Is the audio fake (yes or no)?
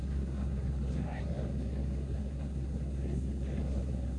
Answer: yes